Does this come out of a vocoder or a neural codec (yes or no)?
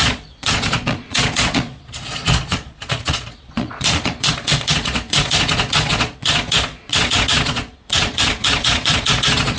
yes